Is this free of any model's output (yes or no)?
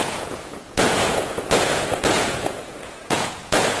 no